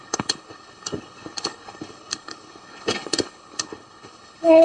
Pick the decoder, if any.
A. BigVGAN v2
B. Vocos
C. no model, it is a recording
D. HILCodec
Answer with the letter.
D